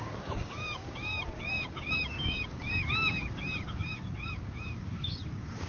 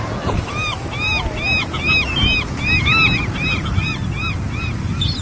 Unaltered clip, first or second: second